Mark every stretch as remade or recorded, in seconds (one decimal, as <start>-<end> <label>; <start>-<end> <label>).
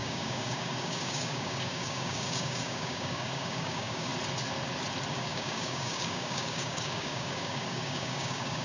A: 0.0-4.1 remade; 4.1-5.1 recorded; 5.1-8.6 remade